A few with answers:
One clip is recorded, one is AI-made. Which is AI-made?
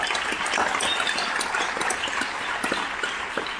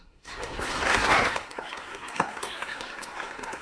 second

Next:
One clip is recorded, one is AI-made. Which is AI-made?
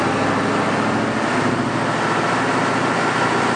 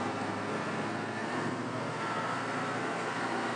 second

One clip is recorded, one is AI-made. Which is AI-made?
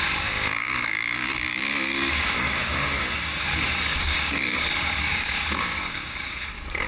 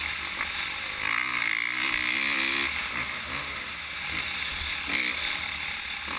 first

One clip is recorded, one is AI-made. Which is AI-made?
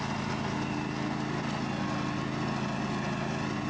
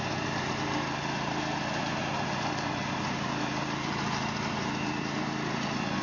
second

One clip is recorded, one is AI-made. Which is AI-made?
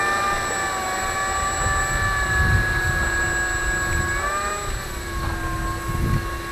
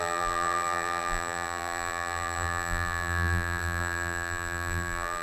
second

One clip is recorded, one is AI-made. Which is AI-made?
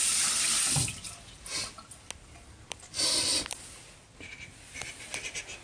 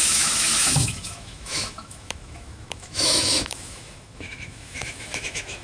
second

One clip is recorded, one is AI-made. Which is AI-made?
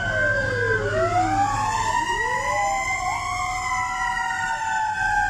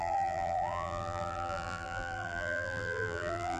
second